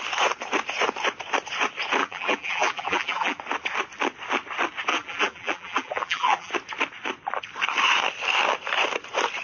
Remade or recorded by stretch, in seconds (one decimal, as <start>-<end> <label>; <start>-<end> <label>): 0.0-2.0 recorded; 2.0-3.4 remade; 3.4-4.9 recorded; 4.9-6.5 remade; 6.5-9.4 recorded